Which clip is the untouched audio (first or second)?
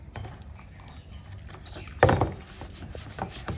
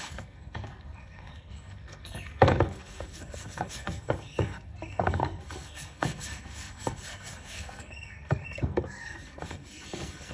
first